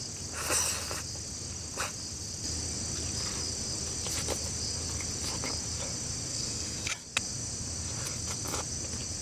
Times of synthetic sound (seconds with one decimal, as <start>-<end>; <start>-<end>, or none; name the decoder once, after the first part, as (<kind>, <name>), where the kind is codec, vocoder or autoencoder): 6.3-6.9 (codec, SNAC)